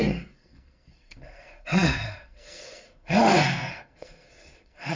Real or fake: fake